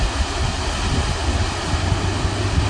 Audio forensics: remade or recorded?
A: recorded